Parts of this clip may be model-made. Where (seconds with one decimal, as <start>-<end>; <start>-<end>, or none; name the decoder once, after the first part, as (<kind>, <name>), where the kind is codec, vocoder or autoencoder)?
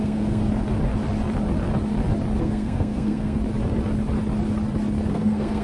0.0-0.4 (codec, SNAC); 2.4-3.4; 5.1-5.6